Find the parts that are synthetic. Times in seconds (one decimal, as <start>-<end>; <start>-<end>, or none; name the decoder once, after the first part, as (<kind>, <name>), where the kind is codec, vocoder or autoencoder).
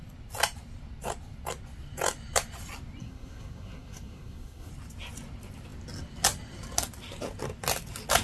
3.0-4.7 (codec, SNAC)